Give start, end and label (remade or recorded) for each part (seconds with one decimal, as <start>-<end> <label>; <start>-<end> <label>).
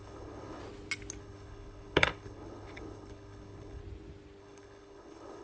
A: 0.0-0.6 remade; 0.6-1.2 recorded; 1.2-3.8 remade; 3.8-4.4 recorded; 4.4-5.4 remade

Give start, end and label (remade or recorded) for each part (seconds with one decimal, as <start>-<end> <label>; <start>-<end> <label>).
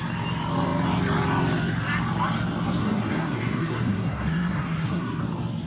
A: 0.0-2.8 recorded; 2.8-5.2 remade; 5.2-5.7 recorded